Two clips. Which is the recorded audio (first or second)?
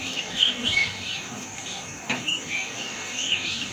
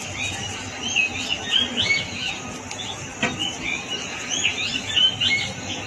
second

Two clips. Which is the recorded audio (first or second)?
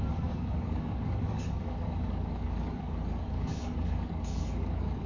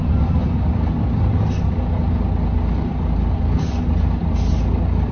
second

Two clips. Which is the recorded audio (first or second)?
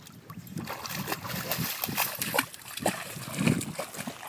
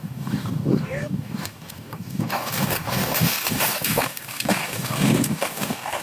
first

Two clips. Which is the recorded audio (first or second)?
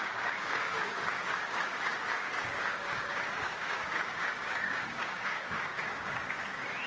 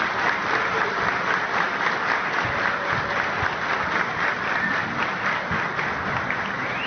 second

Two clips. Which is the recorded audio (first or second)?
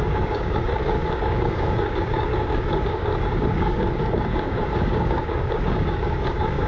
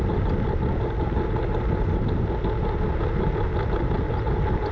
second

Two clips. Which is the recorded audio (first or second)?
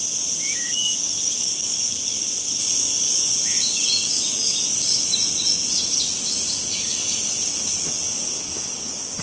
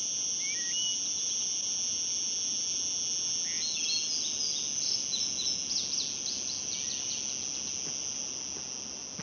second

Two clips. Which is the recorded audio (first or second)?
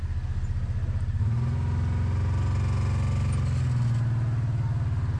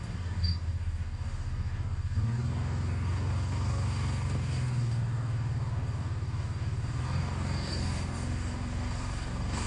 first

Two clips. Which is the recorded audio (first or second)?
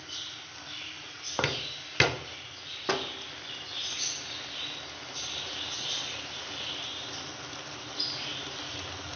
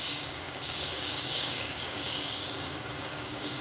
first